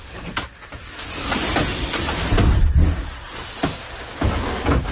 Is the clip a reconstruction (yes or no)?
no